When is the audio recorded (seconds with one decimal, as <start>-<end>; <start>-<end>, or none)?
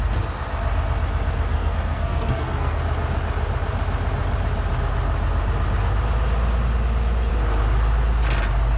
0.0-1.5; 2.8-8.8